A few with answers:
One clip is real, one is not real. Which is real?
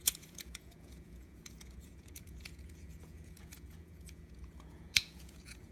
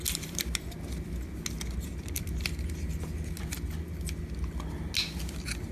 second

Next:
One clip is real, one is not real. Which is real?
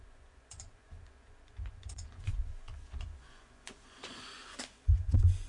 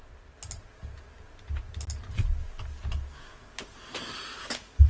second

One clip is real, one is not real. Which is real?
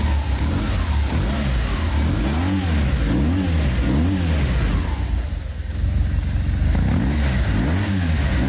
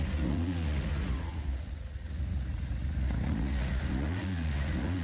first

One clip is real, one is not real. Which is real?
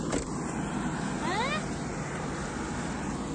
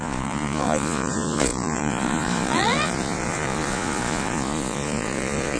first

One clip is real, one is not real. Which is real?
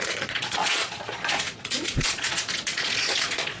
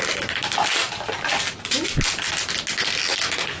second